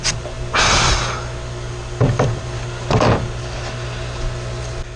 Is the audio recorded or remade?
recorded